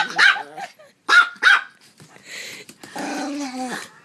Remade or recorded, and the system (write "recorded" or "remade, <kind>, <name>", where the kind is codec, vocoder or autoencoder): recorded